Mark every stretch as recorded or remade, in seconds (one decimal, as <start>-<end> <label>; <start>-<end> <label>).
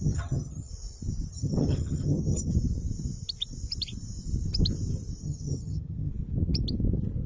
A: 0.0-0.7 remade; 0.7-1.3 recorded; 1.3-2.5 remade; 2.5-5.2 recorded; 5.2-6.1 remade; 6.1-7.3 recorded